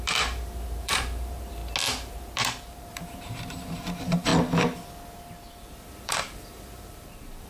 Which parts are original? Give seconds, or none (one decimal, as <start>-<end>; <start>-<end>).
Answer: 1.6-2.1; 4.3-5.5